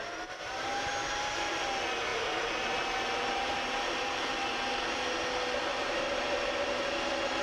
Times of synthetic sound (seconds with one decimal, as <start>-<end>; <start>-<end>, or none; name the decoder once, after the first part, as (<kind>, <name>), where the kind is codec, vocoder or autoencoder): 2.1-4.5 (vocoder, BigVGAN v2); 5.7-6.5

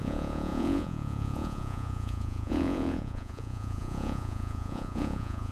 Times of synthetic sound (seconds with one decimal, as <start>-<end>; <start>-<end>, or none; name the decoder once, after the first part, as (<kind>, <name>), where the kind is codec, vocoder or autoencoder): 0.0-5.5 (vocoder, Vocos)

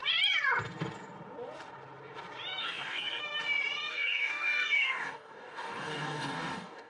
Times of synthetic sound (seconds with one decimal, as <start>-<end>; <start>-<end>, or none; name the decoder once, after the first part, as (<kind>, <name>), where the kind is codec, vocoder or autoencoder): 2.6-3.2 (codec, DAC); 3.9-6.9

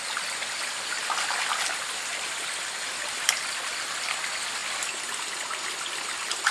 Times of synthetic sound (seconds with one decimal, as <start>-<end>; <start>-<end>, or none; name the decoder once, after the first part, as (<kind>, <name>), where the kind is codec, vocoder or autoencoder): none

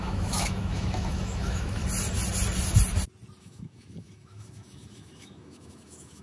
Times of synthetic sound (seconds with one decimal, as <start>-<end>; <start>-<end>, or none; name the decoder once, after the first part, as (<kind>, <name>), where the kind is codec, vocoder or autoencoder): 0.0-1.8 (autoencoder, DAC-VAE); 3.4-6.2

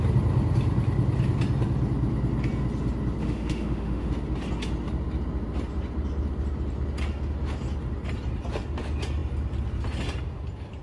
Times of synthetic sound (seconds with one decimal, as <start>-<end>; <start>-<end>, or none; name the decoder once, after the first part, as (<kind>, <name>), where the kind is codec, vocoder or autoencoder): 3.2-4.1 (autoencoder, DAC-VAE)

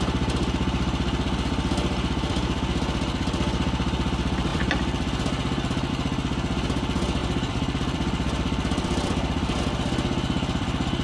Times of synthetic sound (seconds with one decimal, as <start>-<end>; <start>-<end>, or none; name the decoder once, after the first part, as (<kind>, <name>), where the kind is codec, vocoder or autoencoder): 4.5-5.9 (vocoder, BigVGAN v2); 7.2-9.6

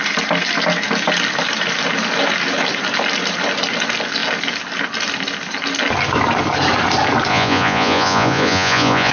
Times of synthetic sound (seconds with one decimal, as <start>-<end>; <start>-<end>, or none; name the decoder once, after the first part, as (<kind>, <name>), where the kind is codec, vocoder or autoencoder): 7.3-9.1 (vocoder, Vocos)